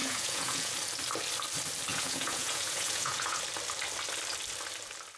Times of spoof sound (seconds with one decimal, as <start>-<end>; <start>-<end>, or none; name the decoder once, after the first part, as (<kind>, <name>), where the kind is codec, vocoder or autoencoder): 0.0-0.7 (vocoder, Vocos); 1.9-3.4